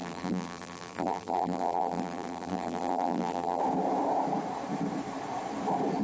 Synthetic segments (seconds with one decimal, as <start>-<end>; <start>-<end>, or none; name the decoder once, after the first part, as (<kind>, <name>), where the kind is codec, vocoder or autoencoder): 0.0-3.6 (vocoder, BigVGAN v2)